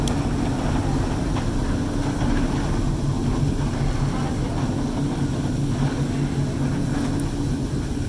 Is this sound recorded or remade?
recorded